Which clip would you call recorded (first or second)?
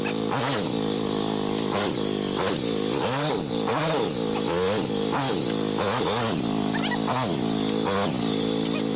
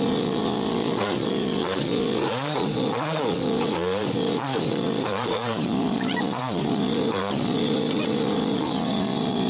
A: first